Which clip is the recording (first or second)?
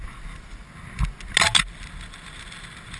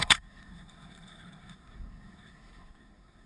first